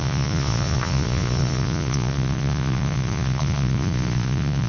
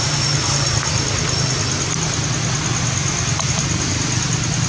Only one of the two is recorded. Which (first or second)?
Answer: second